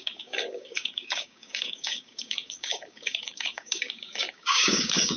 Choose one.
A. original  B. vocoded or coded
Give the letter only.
B